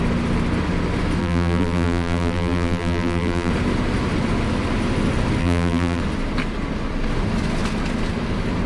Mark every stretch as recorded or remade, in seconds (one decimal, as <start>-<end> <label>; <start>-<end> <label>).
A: 0.0-1.2 recorded; 1.2-3.5 remade; 3.5-5.4 recorded; 5.4-6.0 remade; 6.0-8.7 recorded